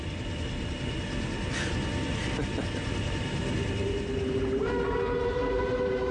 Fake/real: real